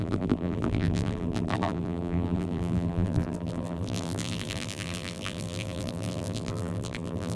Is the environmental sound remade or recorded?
remade